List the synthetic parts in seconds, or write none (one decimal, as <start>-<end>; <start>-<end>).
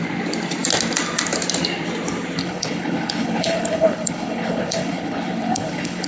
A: 2.4-6.1